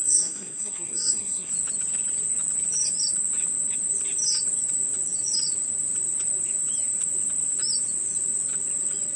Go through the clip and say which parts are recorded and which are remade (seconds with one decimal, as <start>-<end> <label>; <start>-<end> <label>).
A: 0.0-1.5 remade; 1.5-9.2 recorded